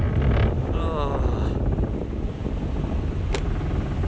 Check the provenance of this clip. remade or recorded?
recorded